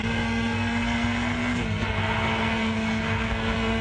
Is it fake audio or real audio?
fake